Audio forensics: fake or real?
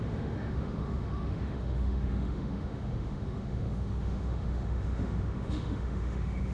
fake